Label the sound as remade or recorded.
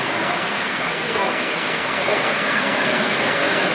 remade